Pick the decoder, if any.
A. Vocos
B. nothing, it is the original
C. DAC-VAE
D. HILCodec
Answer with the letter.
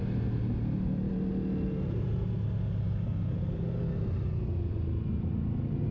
B